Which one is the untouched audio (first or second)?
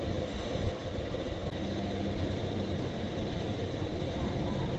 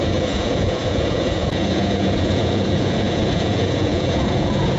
first